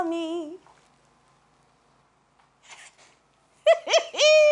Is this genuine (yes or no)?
yes